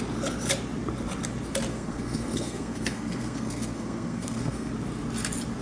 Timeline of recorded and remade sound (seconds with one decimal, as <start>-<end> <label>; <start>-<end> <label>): 0.0-1.7 recorded; 1.7-4.7 remade; 4.7-5.6 recorded